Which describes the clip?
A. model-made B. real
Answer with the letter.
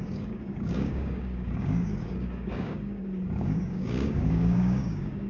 A